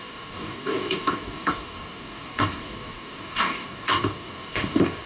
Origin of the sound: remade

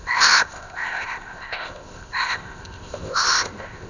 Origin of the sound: remade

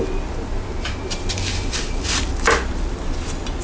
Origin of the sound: recorded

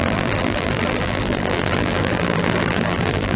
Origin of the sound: remade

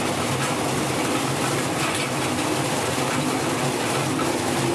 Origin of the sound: recorded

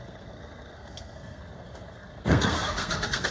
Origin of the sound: remade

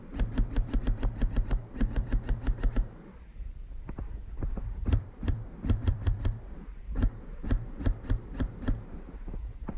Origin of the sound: remade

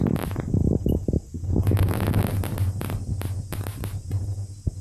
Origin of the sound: recorded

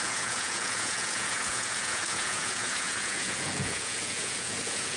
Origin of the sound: remade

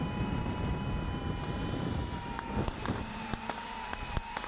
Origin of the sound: remade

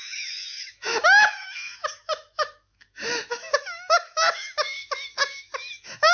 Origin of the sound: remade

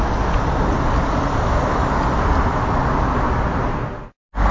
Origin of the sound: recorded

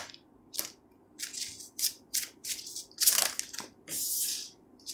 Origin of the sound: recorded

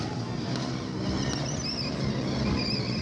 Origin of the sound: recorded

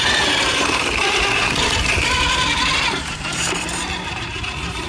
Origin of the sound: remade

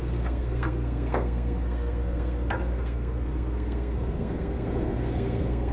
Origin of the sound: remade